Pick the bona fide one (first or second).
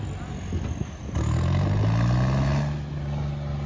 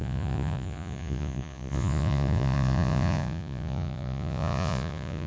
first